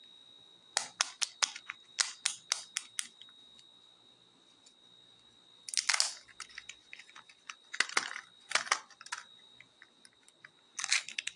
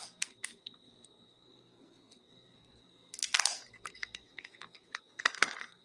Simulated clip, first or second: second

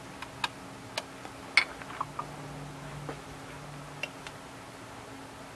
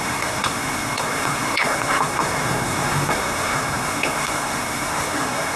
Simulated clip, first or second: second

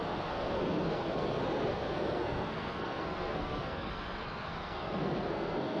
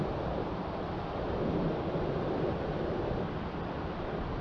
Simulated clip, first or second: first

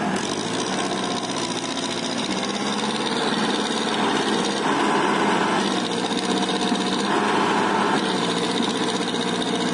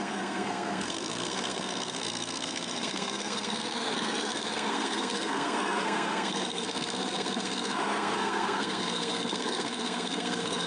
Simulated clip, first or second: second